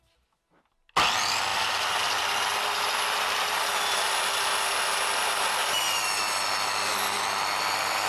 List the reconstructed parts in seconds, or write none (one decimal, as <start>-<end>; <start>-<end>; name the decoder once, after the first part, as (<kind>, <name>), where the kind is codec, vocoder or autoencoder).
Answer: none